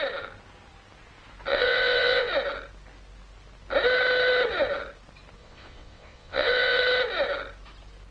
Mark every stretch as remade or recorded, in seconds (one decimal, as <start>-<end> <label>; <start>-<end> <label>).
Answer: 0.0-1.5 recorded; 1.5-2.3 remade; 2.3-5.4 recorded; 5.4-6.8 remade; 6.8-8.1 recorded

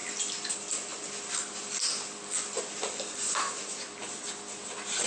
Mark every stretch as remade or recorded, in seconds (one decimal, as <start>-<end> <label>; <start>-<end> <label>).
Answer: 0.0-5.1 recorded

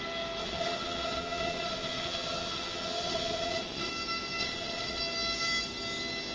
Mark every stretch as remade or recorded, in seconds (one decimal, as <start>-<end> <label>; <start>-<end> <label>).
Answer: 0.0-0.4 recorded; 0.4-3.9 remade; 3.9-4.4 recorded; 4.4-5.0 remade; 5.0-6.3 recorded

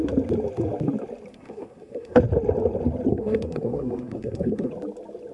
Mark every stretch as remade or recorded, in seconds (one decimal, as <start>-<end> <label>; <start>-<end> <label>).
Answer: 0.0-1.3 recorded; 1.3-2.2 remade; 2.2-3.1 recorded; 3.1-4.7 remade; 4.7-5.3 recorded

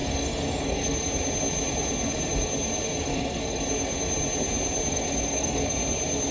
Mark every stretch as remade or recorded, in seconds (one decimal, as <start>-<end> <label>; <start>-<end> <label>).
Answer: 0.0-1.1 remade; 1.1-3.1 recorded; 3.1-3.6 remade; 3.6-4.9 recorded; 4.9-5.7 remade; 5.7-6.3 recorded

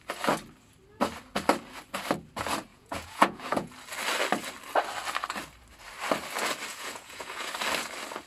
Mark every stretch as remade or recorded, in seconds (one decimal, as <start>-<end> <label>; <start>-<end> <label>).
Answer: 0.0-2.7 recorded; 2.7-3.7 remade; 3.7-6.7 recorded; 6.7-7.5 remade; 7.5-8.3 recorded

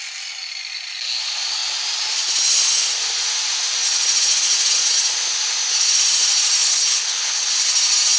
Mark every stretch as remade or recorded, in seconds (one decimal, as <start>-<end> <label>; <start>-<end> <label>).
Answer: 0.0-6.6 recorded; 6.6-7.5 remade; 7.5-8.2 recorded